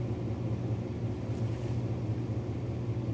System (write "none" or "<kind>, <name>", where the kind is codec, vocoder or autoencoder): none